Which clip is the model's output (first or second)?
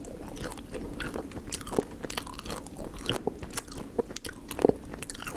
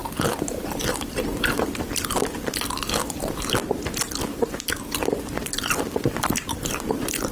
second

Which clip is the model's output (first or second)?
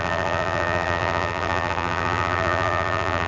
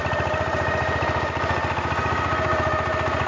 first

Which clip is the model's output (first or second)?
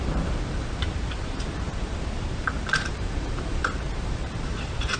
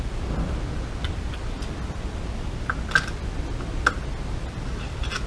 first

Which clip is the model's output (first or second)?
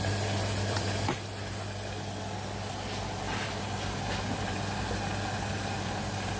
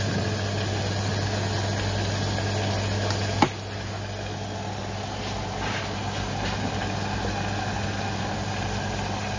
first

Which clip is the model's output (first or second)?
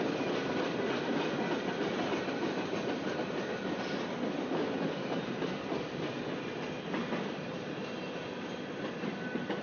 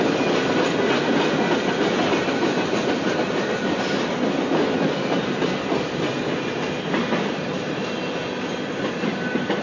first